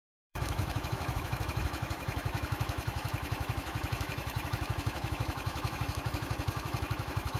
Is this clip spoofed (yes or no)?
yes